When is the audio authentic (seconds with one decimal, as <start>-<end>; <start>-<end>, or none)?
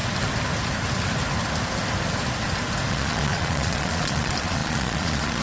0.0-2.9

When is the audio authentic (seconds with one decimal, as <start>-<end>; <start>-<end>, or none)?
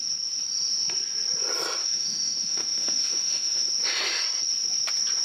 0.0-1.8; 3.7-5.2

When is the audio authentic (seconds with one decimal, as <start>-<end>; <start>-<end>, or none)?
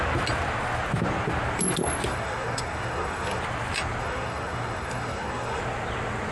0.0-2.1; 3.4-4.0; 5.6-6.3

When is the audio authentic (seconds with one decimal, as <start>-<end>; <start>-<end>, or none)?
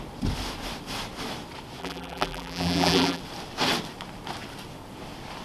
0.0-1.8; 3.2-5.4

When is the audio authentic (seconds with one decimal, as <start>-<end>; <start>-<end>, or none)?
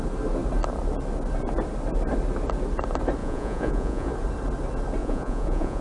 0.0-3.2; 4.1-5.0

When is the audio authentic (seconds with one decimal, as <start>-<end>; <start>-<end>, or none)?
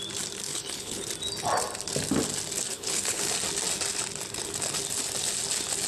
0.0-0.5; 1.1-2.7; 3.2-5.9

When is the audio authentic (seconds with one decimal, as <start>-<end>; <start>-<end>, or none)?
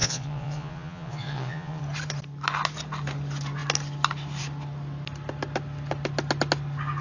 1.8-7.0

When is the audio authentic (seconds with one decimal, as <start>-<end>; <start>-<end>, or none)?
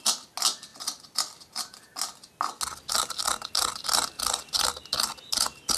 0.0-5.8